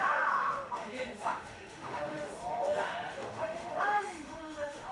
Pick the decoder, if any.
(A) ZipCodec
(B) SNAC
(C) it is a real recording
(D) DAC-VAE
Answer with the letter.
D